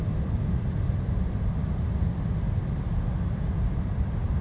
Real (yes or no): yes